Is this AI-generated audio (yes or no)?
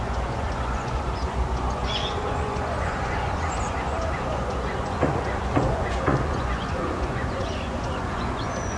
yes